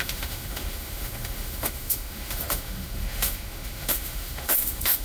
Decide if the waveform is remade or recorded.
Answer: remade